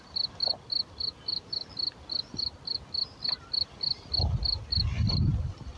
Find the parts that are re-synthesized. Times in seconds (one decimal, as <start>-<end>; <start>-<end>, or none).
none